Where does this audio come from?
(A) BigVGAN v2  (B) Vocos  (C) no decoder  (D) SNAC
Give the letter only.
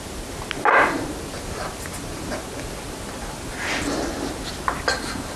C